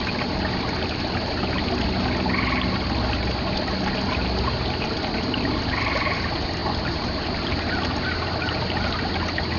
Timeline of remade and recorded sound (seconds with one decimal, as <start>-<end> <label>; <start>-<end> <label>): 0.0-9.6 recorded